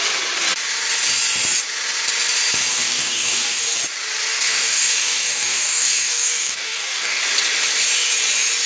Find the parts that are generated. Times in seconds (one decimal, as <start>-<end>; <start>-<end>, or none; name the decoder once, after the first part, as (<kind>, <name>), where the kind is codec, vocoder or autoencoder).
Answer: 2.7-3.6 (codec, DAC); 4.3-7.2